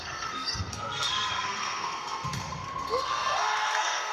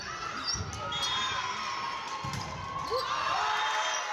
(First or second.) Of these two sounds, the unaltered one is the second